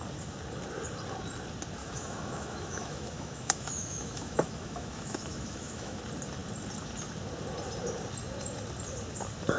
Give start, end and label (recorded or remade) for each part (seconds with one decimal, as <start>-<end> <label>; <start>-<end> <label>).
0.0-1.8 recorded; 1.8-6.0 remade; 6.0-9.6 recorded